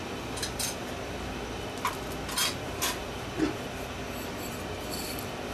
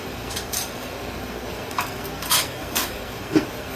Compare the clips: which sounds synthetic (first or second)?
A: second